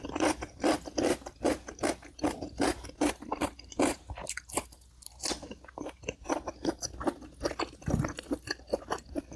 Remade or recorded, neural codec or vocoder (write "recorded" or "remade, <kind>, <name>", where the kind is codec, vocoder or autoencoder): recorded